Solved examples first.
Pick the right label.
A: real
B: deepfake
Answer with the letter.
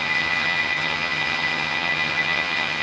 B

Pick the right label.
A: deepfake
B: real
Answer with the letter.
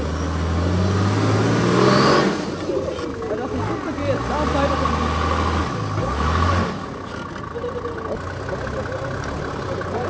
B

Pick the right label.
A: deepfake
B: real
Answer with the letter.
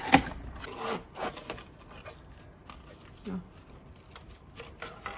B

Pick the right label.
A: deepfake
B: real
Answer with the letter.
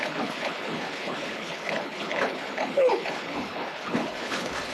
A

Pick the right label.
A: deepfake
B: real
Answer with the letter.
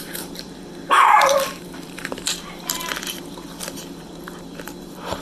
A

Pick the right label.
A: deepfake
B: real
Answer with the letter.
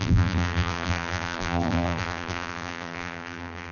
A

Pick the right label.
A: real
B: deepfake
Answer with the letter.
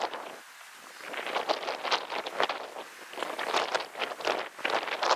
A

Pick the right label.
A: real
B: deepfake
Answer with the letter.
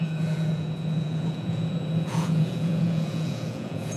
B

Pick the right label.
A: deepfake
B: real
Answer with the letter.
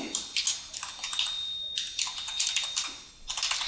B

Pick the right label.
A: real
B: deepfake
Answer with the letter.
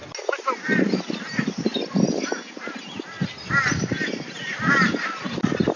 A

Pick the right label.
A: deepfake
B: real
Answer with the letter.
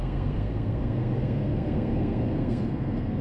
A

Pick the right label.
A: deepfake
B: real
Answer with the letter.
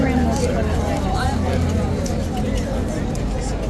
B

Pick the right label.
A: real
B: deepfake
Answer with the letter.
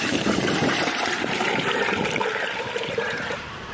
B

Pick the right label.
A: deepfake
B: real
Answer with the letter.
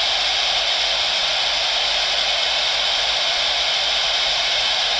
B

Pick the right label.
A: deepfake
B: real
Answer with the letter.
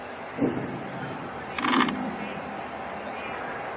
B